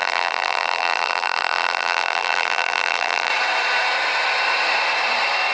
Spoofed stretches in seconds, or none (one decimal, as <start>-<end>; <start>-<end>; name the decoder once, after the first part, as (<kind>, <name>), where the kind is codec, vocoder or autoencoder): 0.0-3.3 (vocoder, BigVGAN v2)